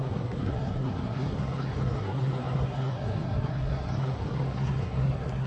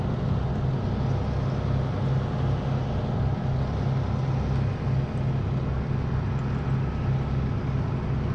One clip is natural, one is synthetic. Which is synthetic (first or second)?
first